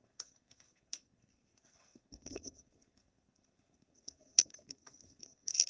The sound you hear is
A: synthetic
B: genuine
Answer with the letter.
A